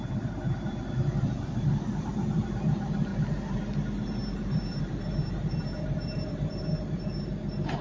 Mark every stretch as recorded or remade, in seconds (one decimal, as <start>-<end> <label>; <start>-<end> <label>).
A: 0.0-3.1 remade; 3.1-4.5 recorded; 4.5-7.8 remade